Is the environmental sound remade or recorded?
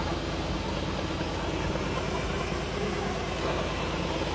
recorded